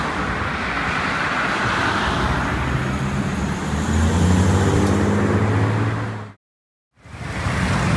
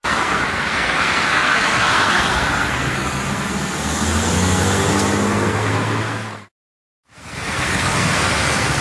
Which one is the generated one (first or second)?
second